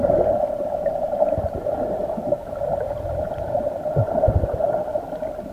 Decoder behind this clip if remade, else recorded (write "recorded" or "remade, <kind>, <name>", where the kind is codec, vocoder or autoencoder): remade, vocoder, BigVGAN v2